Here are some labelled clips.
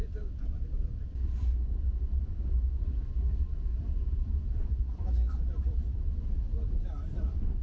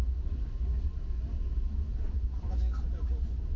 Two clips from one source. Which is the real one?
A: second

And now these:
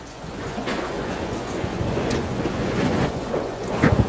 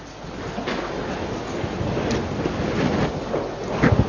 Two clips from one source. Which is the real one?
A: second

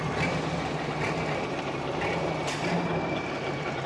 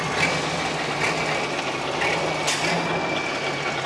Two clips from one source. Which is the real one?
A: second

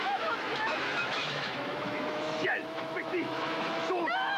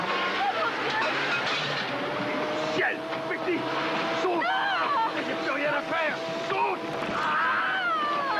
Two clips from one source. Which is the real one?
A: second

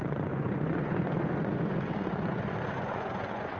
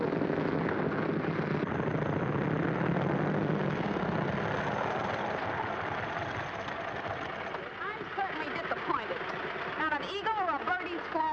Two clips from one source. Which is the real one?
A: second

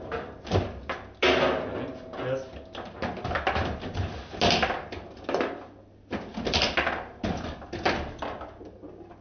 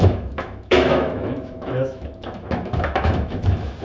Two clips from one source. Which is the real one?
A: first